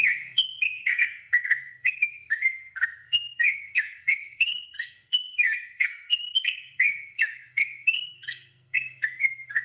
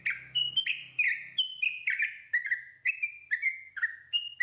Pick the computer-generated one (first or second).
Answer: first